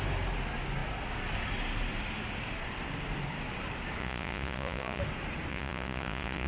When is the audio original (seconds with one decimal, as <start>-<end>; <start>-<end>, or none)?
0.0-4.0; 5.0-5.5